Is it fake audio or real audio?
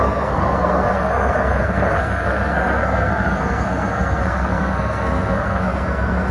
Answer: fake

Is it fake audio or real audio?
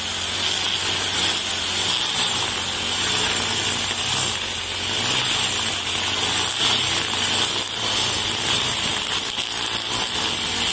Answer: real